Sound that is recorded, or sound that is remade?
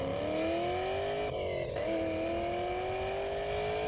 recorded